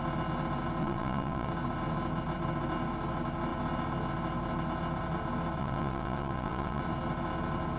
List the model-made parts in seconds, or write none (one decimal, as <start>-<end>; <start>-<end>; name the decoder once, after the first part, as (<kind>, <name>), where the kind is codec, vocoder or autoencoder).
0.8-1.5 (vocoder, WaveNeXt); 5.6-6.8